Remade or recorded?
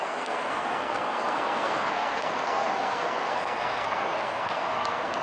remade